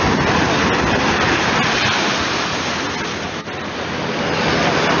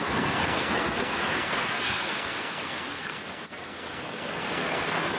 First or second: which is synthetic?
second